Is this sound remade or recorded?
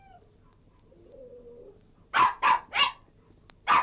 recorded